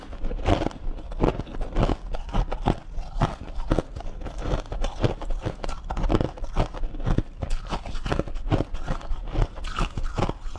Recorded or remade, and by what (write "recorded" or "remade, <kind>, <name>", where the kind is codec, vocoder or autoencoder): recorded